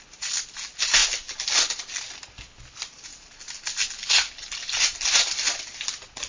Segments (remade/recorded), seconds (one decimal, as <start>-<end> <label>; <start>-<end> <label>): 0.0-1.0 remade; 1.0-2.0 recorded; 2.0-3.1 remade; 3.1-5.1 recorded; 5.1-6.3 remade